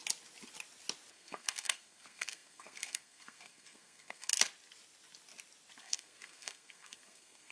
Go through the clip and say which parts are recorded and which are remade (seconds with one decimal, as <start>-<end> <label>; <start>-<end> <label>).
0.0-1.1 recorded; 1.1-4.3 remade; 4.3-5.8 recorded; 5.8-7.5 remade